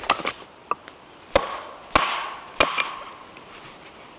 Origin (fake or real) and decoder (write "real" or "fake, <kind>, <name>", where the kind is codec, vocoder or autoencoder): real